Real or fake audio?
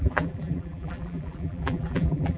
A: fake